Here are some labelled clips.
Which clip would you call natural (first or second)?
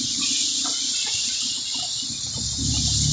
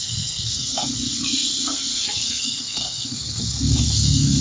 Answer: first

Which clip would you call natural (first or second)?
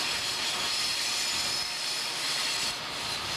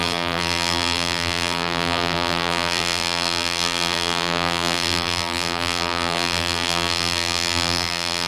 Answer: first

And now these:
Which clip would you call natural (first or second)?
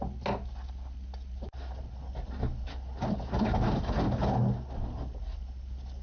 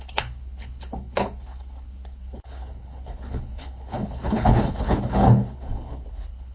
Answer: first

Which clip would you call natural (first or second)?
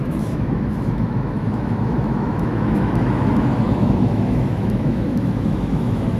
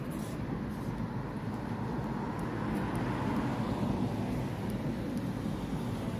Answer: second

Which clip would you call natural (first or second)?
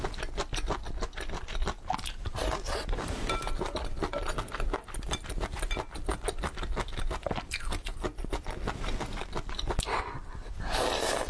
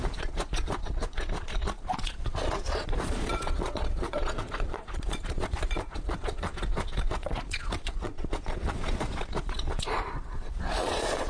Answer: first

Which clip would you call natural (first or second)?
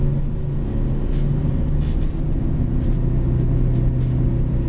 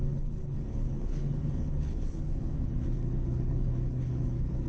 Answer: first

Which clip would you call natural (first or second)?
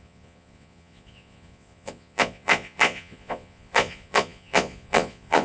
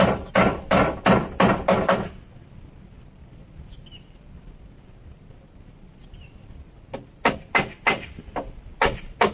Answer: second